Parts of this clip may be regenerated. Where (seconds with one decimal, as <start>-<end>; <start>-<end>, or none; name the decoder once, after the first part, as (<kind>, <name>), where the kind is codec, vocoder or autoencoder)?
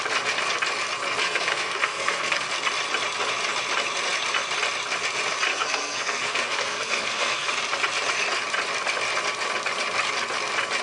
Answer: 1.2-2.5 (codec, SNAC); 5.5-7.5